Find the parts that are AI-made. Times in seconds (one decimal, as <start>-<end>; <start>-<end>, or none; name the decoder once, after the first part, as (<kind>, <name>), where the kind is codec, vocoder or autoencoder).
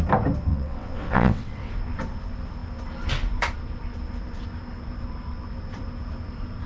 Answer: 0.5-1.7 (vocoder, WaveNeXt)